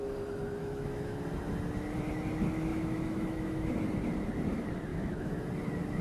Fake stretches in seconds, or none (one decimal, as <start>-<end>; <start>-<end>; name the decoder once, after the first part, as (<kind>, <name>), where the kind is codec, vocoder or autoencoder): 0.6-1.2 (autoencoder, DAC-VAE); 2.7-3.7; 4.9-5.4